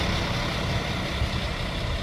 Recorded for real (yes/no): yes